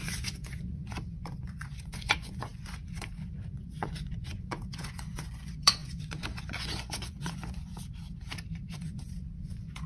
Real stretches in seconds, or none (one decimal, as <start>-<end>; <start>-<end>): 7.7-8.7